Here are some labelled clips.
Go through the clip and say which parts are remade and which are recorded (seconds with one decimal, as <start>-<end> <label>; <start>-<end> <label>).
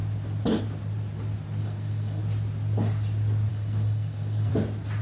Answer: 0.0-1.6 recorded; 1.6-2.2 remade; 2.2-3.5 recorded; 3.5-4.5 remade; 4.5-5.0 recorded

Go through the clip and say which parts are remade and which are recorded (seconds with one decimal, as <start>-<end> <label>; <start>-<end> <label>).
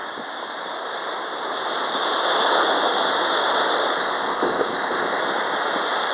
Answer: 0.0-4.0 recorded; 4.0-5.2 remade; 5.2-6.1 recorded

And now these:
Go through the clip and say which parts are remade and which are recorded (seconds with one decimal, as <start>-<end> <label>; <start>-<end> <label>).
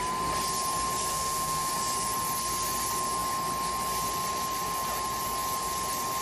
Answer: 0.0-1.1 recorded; 1.1-1.7 remade; 1.7-6.2 recorded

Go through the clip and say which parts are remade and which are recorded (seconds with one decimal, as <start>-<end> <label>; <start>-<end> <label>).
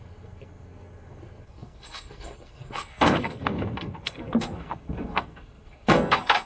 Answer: 0.0-6.5 remade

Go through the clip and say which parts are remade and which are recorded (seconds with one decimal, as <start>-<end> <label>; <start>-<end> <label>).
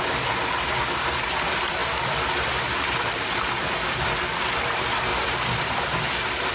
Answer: 0.0-6.5 recorded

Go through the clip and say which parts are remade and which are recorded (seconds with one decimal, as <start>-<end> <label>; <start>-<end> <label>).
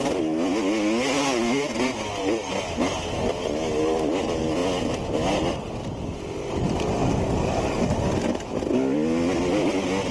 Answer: 0.0-10.1 recorded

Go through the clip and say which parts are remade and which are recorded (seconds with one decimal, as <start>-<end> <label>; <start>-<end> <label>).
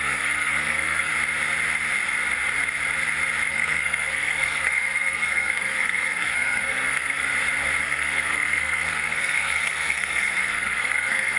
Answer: 0.0-1.1 remade; 1.1-3.5 recorded; 3.5-7.3 remade; 7.3-7.8 recorded; 7.8-11.4 remade